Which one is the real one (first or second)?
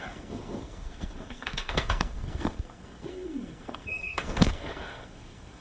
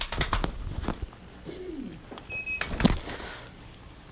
second